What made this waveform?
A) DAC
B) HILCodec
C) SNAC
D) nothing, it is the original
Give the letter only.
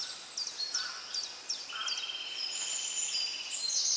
D